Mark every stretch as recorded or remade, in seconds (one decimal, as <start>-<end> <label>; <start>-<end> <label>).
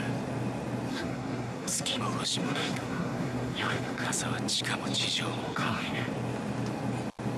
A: 0.0-0.9 recorded; 0.9-2.0 remade; 2.0-2.4 recorded; 2.4-4.1 remade; 4.1-5.4 recorded; 5.4-6.1 remade; 6.1-7.4 recorded